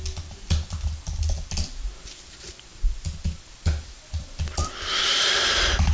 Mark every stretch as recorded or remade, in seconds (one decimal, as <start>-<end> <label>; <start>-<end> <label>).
0.0-5.9 recorded